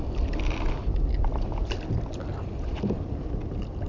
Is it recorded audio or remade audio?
recorded